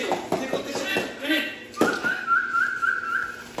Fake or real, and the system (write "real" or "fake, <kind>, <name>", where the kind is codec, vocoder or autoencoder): real